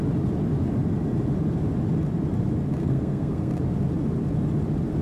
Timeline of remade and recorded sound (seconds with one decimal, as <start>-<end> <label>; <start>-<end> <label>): 0.0-2.8 recorded; 2.8-3.5 remade; 3.5-5.0 recorded